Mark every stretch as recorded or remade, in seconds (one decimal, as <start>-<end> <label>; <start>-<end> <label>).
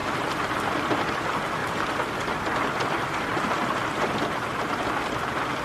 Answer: 0.0-5.6 recorded